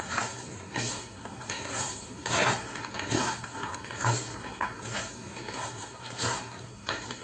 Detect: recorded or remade remade